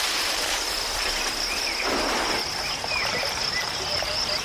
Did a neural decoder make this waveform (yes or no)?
no